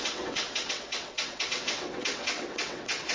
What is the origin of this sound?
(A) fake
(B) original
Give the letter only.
A